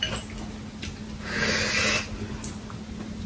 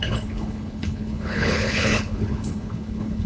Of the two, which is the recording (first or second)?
first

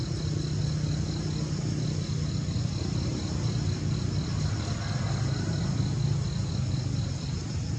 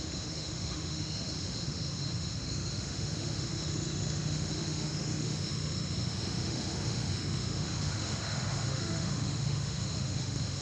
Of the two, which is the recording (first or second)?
first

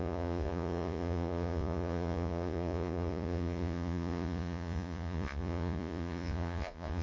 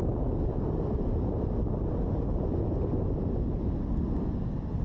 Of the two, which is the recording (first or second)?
second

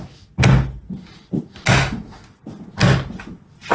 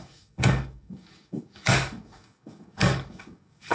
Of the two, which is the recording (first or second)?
first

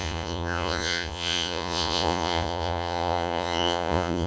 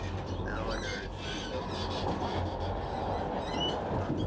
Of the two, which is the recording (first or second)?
second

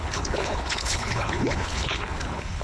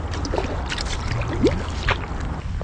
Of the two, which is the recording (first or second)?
second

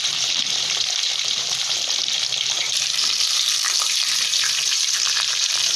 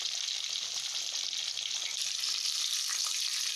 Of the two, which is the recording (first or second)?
second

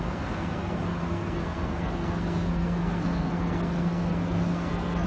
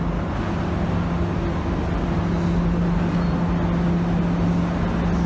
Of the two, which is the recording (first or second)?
second